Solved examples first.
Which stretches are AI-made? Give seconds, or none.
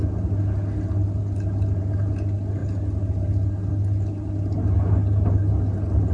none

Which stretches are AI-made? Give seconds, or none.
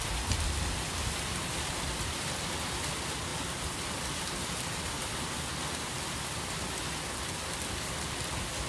none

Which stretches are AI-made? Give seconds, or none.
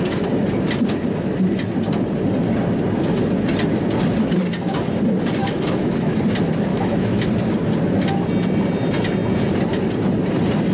5.4-6.2 (autoencoder, DAC-VAE); 6.7-7.3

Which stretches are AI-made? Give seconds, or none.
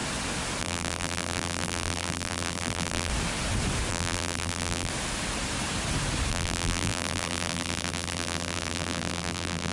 0.6-3.1 (vocoder, BigVGAN v2); 3.9-4.9; 6.3-9.7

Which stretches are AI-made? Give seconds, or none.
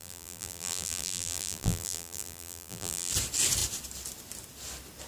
0.0-3.1 (vocoder, BigVGAN v2)